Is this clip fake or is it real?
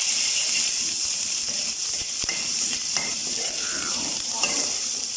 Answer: fake